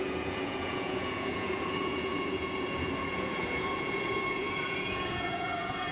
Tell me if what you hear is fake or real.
fake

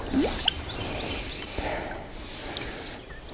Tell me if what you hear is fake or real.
real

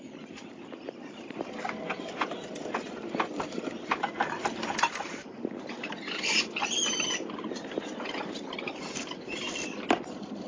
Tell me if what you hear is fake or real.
real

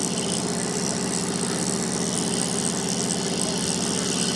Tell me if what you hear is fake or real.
real